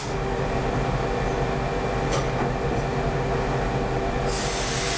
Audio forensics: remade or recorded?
recorded